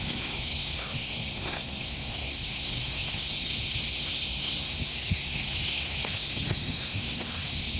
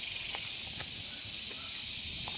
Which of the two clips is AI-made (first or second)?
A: first